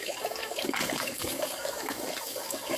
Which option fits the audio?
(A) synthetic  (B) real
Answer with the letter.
A